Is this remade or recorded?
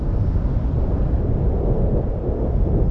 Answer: recorded